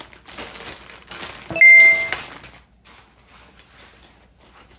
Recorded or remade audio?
recorded